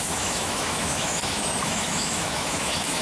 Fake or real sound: fake